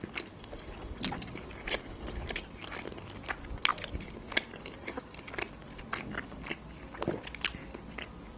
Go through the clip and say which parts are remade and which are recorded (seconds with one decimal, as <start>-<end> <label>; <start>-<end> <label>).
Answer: 0.0-3.7 recorded; 3.7-5.0 remade; 5.0-8.4 recorded